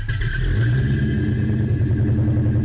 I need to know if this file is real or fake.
real